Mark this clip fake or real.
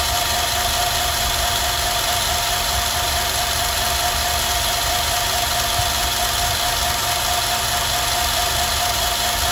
real